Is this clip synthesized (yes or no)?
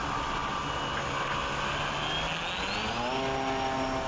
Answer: no